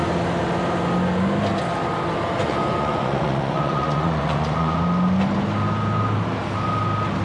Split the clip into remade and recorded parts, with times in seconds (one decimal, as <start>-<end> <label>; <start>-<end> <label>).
0.0-2.4 recorded; 2.4-4.8 remade; 4.8-7.2 recorded